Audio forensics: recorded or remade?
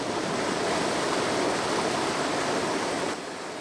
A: recorded